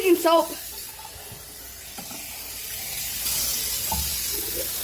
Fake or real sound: real